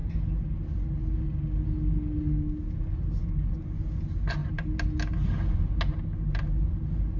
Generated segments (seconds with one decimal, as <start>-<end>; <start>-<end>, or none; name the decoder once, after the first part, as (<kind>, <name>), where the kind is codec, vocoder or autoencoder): none